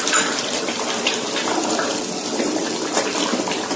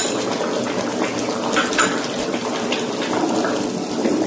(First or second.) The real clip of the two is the second